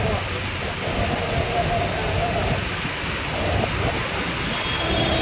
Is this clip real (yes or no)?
yes